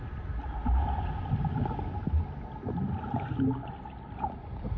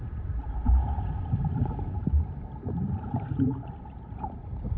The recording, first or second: first